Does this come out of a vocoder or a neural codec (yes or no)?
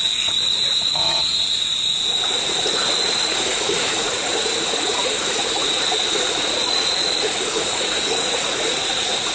yes